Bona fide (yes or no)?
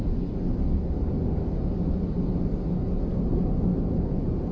yes